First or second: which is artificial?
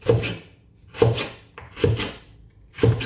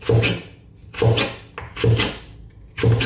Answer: first